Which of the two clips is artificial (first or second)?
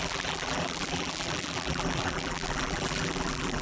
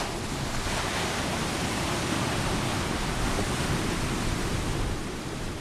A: first